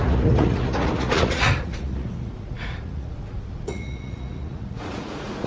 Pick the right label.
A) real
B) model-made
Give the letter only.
B